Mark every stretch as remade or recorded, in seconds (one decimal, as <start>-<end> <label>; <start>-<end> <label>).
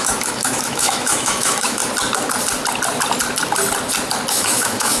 0.0-1.8 remade; 1.8-4.3 recorded; 4.3-5.0 remade